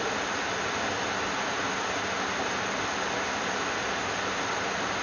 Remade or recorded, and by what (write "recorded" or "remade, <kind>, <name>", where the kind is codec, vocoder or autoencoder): recorded